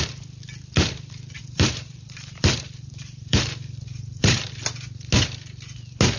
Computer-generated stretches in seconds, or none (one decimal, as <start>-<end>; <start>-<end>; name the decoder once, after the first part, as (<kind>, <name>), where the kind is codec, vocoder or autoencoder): 1.4-4.5 (vocoder, BigVGAN v2)

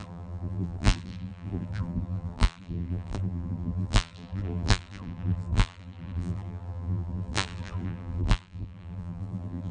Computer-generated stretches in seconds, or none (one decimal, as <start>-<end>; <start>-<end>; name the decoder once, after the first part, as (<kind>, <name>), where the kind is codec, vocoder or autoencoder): 0.0-9.7 (vocoder, BigVGAN v2)

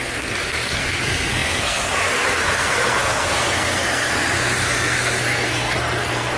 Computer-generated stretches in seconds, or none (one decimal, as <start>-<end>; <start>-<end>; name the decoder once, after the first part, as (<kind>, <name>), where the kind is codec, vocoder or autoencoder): 0.0-6.4 (codec, SNAC)